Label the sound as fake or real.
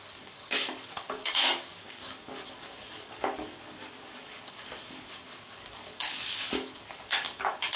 fake